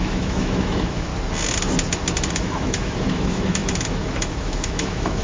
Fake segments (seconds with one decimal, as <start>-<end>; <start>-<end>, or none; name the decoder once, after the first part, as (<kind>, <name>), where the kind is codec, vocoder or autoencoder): 0.0-1.1 (autoencoder, DAC-VAE); 2.3-5.2